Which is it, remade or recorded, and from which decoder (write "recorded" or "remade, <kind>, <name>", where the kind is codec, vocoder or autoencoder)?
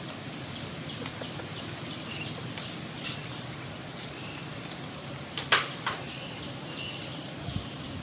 remade, vocoder, BigVGAN v2